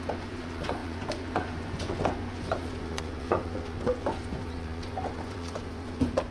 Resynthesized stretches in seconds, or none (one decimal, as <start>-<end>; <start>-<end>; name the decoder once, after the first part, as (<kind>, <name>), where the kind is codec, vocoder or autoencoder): 0.0-6.3 (vocoder, Vocos)